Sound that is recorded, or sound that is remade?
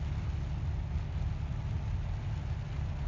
recorded